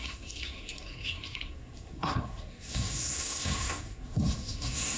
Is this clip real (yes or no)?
no